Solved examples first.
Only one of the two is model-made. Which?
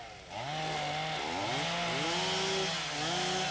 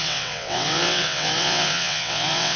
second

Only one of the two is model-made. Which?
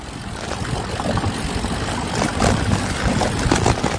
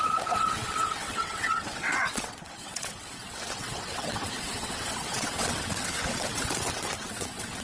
second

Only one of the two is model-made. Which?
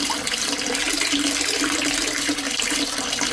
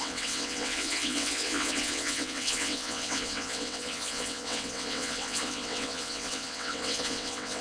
second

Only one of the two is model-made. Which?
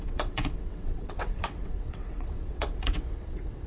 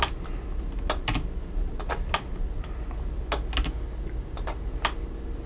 first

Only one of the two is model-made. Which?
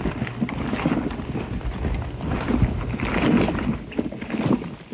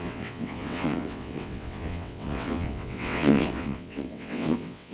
second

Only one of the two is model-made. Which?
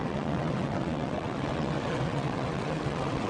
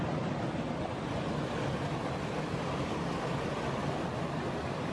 first